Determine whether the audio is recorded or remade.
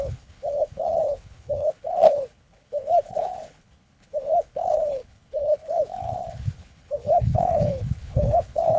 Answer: remade